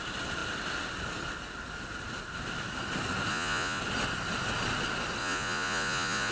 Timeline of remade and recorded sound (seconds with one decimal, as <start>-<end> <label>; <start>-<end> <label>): 0.0-3.3 recorded; 3.3-3.8 remade; 3.8-5.2 recorded; 5.2-6.3 remade

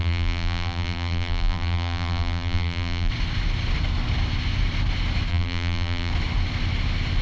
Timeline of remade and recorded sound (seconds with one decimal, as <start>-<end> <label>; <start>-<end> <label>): 0.0-3.1 remade; 3.1-5.3 recorded; 5.3-6.1 remade; 6.1-7.2 recorded